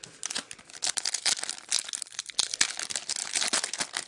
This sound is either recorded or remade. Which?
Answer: recorded